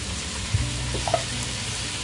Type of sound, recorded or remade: recorded